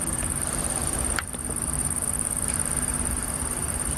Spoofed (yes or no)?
yes